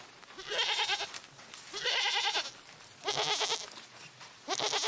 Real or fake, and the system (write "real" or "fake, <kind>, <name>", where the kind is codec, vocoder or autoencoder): real